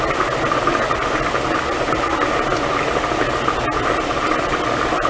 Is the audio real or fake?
real